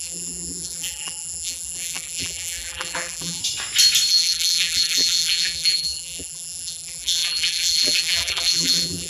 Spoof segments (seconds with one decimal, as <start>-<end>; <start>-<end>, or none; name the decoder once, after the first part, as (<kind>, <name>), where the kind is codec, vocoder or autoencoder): 0.0-3.4 (vocoder, BigVGAN v2); 4.1-9.1